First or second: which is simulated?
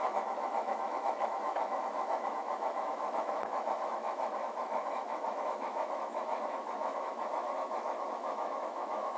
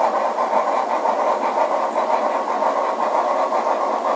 first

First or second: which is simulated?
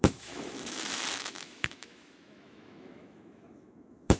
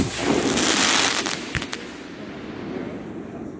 first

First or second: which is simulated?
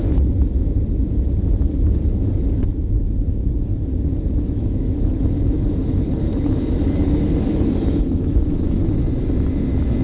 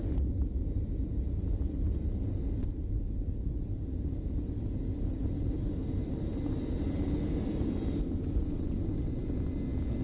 first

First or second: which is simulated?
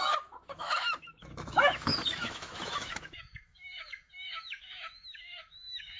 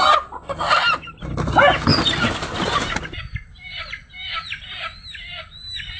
first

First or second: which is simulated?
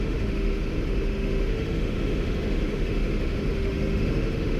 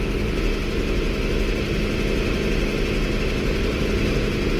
first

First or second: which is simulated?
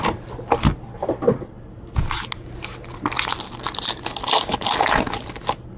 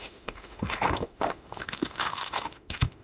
second